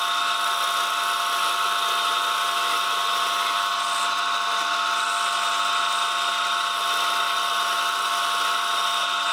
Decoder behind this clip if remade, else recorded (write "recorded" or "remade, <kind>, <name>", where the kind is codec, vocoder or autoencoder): recorded